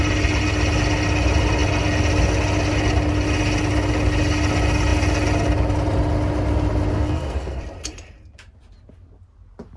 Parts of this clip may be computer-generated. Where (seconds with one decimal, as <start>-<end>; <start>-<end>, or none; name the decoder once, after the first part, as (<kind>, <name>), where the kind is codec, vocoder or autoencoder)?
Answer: 6.9-7.6 (codec, SNAC)